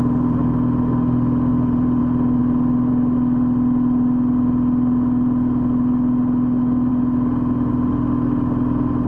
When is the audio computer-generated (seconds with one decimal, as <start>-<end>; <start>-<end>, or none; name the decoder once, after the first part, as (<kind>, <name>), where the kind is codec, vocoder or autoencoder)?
1.5-2.0 (vocoder, BigVGAN v2)